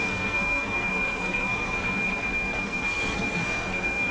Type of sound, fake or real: fake